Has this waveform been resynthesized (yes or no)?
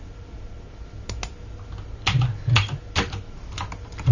no